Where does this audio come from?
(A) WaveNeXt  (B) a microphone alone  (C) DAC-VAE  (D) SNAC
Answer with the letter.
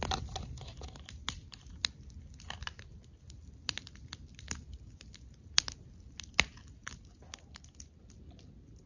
B